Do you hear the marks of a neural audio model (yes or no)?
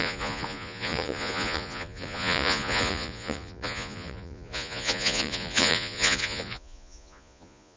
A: yes